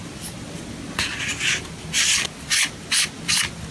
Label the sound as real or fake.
real